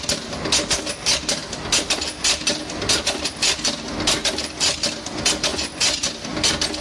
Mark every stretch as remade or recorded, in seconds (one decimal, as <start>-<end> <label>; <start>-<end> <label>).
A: 0.0-5.5 recorded; 5.5-6.1 remade; 6.1-6.8 recorded